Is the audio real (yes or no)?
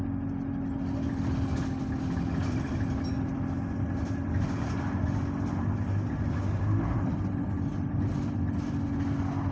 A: yes